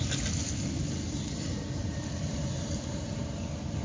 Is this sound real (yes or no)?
yes